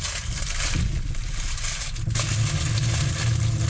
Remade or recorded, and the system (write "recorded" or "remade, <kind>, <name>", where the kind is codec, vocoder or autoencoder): recorded